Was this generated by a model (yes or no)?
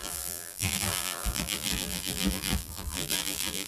yes